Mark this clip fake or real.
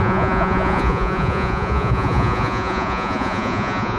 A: fake